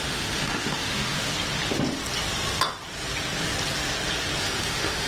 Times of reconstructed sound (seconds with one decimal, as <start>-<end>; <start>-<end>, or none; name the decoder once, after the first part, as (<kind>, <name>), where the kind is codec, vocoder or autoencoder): 0.0-1.3 (autoencoder, DAC-VAE); 4.4-5.1